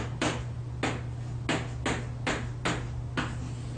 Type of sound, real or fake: real